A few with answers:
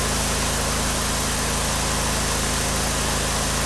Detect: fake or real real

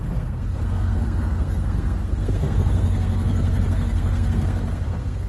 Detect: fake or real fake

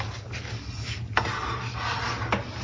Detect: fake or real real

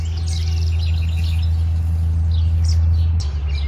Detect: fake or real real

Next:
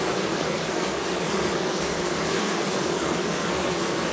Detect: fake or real fake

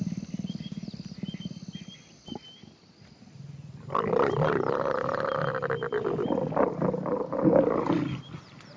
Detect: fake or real real